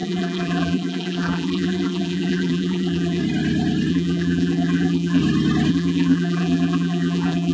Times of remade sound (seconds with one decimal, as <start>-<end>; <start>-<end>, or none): 0.0-3.2; 3.9-5.2; 5.7-7.5